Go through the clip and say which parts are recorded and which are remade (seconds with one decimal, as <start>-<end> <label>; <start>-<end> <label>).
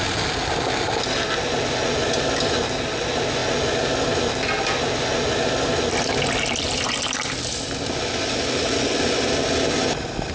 0.0-10.3 recorded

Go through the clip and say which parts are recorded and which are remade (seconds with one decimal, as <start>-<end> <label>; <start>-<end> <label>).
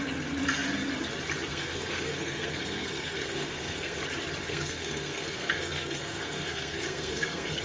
0.0-1.5 recorded; 1.5-4.0 remade; 4.0-4.4 recorded; 4.4-7.6 remade